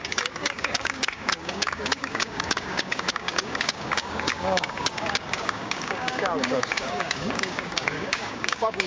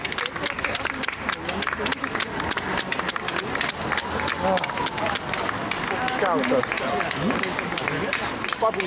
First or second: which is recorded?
second